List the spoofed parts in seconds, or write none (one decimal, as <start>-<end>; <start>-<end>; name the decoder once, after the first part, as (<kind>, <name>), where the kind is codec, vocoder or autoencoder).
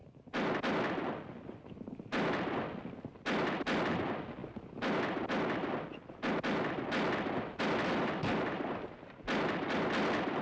none